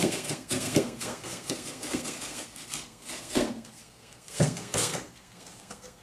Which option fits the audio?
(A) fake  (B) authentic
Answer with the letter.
A